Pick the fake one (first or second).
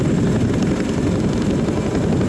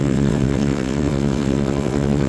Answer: second